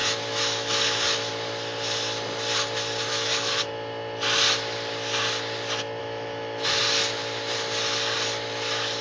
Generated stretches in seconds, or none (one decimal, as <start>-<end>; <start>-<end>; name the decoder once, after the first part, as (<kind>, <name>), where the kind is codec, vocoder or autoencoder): 0.0-1.3 (autoencoder, DAC-VAE); 3.1-3.7; 6.0-6.8